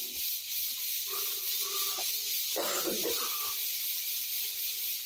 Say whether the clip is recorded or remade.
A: recorded